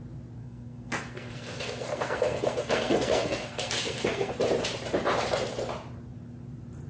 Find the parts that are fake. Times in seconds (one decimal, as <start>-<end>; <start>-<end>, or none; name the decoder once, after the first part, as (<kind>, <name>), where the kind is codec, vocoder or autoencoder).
0.4-4.3 (codec, SNAC)